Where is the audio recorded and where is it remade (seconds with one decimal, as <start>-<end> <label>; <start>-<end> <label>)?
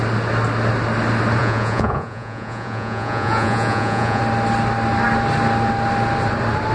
0.0-1.4 recorded; 1.4-4.2 remade; 4.2-6.7 recorded